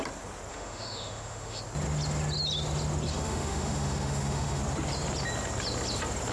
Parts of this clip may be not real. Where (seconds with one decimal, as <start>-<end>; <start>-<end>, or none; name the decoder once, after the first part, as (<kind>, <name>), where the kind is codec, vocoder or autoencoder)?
0.5-1.6 (autoencoder, DAC-VAE); 3.1-4.6